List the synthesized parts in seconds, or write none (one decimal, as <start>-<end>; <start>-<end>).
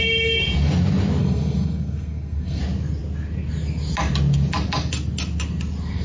1.2-2.6